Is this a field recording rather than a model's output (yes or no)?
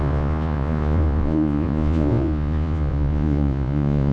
no